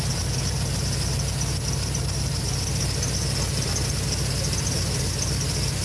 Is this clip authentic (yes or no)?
yes